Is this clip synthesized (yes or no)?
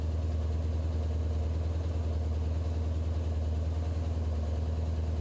no